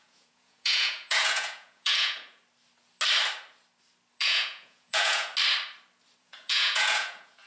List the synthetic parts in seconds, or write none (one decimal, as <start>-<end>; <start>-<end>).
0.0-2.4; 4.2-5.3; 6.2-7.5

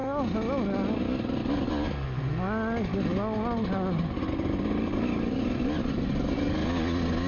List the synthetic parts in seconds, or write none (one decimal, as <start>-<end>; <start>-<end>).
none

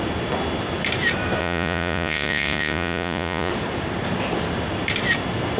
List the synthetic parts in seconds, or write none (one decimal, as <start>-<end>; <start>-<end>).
1.4-3.5

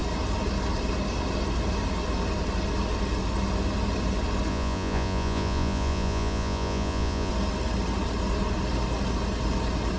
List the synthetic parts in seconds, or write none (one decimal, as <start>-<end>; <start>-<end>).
4.5-7.3